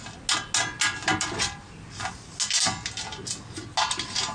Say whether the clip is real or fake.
real